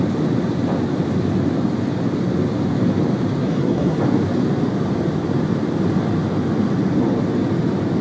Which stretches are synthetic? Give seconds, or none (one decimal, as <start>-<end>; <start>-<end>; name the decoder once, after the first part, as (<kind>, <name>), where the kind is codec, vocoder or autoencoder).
3.4-4.0 (codec, SNAC)

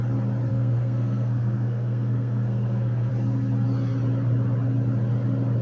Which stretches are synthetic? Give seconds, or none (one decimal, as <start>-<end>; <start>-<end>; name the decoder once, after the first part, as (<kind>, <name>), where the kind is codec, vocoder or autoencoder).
0.5-3.1 (codec, SNAC)

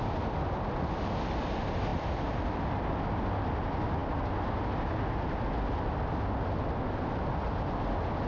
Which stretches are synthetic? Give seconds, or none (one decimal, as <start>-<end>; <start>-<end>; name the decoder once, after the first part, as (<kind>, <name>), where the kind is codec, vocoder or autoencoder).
none